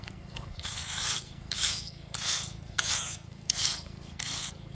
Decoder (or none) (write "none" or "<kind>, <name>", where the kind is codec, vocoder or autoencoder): codec, SNAC